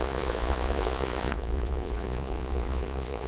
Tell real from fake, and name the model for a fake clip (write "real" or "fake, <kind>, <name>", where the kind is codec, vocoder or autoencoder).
fake, vocoder, Vocos